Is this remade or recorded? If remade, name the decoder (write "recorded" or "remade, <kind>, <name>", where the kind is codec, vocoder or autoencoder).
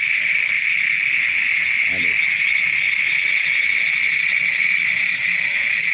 recorded